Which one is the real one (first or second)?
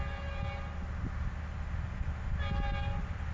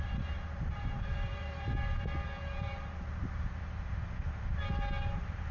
first